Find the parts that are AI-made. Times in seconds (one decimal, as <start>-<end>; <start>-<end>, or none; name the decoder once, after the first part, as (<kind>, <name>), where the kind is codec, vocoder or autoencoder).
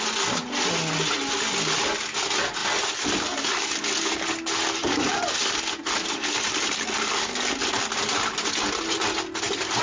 none